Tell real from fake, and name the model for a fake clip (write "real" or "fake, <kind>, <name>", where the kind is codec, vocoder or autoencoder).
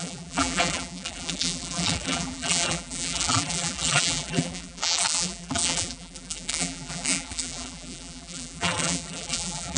fake, vocoder, BigVGAN v2